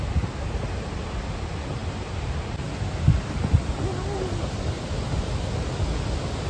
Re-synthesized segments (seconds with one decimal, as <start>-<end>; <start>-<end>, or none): none

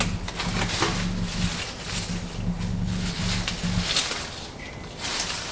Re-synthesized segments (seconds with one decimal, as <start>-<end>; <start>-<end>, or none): 2.7-3.2